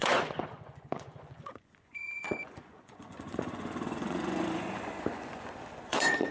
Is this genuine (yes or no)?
no